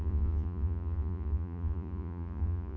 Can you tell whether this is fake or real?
fake